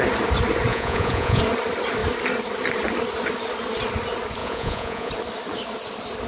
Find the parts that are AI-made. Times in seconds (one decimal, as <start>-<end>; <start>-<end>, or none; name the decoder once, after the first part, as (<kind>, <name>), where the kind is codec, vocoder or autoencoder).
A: 0.7-1.4 (vocoder, Vocos); 4.4-5.1